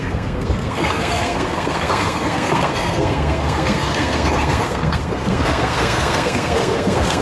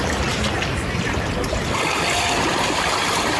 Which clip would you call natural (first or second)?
second